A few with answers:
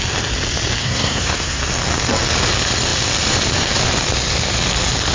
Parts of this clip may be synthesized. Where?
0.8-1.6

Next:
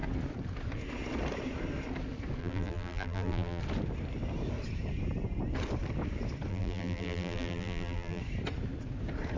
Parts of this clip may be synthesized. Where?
2.4-3.6; 6.5-8.2

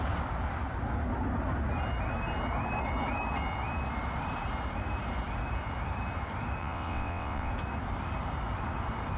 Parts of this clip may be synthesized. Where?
6.6-7.5

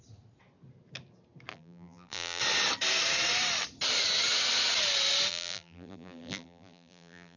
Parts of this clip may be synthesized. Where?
1.5-2.4; 5.3-7.4

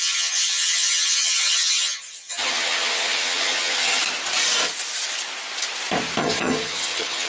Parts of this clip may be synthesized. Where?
0.0-4.0; 6.2-7.3

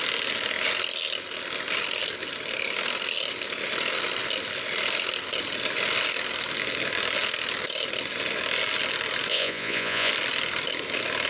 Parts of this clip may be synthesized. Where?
9.3-10.1

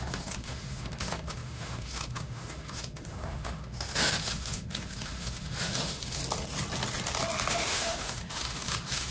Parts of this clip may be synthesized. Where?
0.0-6.2; 7.5-9.1

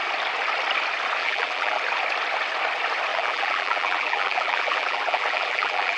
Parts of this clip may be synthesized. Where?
1.2-1.8; 3.1-6.0